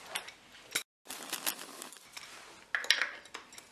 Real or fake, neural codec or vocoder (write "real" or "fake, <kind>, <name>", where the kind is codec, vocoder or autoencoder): real